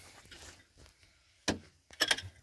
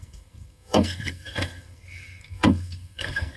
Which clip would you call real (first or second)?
first